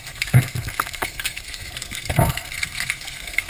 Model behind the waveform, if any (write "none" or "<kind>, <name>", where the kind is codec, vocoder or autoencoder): codec, SNAC